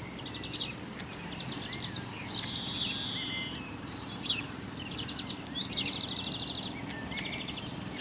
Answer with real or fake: real